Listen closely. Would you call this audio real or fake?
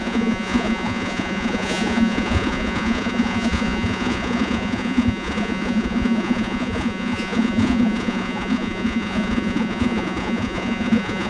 fake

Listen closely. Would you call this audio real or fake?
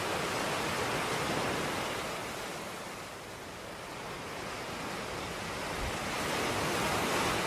real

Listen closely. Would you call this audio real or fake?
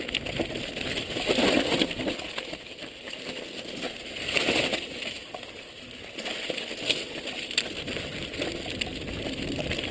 real